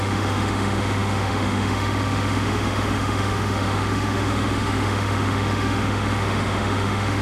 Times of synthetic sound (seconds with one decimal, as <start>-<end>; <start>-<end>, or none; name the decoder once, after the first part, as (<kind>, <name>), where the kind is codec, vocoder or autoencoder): 0.0-7.2 (autoencoder, DAC-VAE)